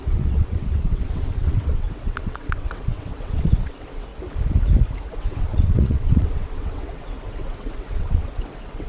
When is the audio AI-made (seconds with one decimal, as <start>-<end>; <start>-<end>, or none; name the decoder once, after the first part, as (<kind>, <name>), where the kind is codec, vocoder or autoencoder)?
0.0-4.1 (vocoder, WaveNeXt); 5.1-8.9